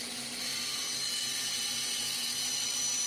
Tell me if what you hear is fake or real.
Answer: real